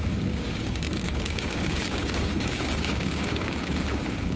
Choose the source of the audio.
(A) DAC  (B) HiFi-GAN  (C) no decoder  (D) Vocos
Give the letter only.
A